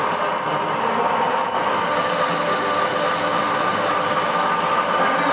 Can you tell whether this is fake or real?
real